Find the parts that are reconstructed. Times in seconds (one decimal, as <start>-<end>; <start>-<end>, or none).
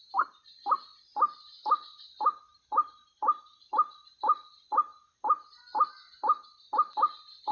2.5-4.5